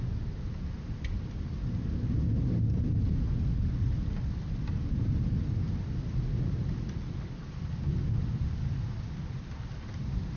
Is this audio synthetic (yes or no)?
no